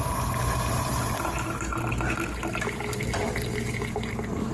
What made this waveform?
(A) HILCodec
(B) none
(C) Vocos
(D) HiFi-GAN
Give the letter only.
B